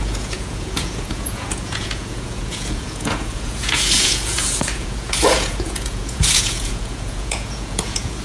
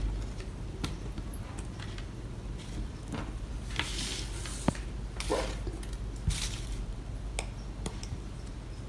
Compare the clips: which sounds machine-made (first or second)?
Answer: first